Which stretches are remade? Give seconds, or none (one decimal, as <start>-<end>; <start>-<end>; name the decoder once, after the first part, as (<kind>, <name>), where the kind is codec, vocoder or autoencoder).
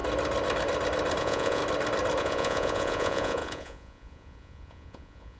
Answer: 1.2-1.6 (vocoder, Vocos); 2.2-5.4